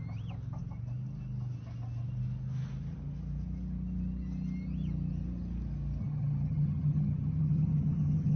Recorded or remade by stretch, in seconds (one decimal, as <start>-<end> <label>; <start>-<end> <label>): 0.0-6.0 recorded; 6.0-8.4 remade